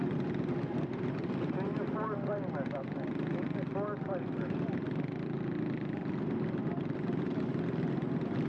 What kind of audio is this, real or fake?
real